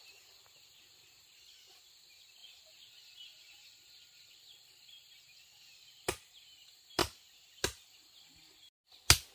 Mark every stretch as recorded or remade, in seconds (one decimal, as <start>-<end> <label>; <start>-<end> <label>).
0.0-9.3 recorded